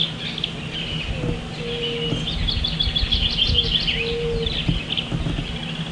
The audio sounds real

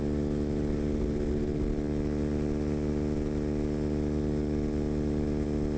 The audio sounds real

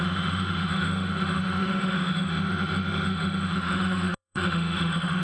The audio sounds fake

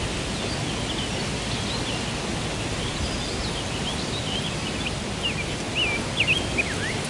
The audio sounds real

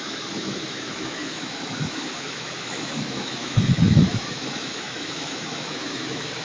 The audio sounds fake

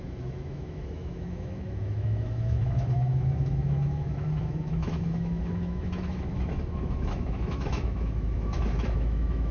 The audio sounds fake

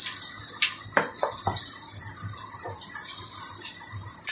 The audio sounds real